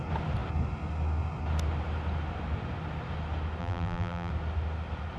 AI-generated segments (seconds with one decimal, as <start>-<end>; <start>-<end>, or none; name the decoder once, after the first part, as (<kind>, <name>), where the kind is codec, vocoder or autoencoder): 3.6-4.3 (vocoder, BigVGAN v2)

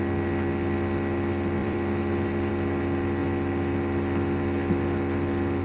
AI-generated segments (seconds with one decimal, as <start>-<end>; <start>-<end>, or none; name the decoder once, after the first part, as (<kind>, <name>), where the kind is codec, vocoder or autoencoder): 1.6-2.5 (vocoder, BigVGAN v2)

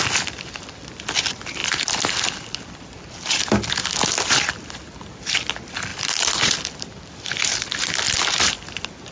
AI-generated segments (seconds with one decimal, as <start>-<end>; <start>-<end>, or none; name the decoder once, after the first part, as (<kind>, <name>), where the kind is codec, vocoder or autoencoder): 1.6-3.1 (vocoder, BigVGAN v2); 5.9-7.7

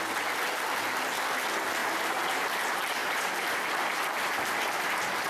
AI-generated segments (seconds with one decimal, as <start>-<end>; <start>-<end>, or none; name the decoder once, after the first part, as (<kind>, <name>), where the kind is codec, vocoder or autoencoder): 1.8-2.3 (vocoder, BigVGAN v2); 3.0-3.7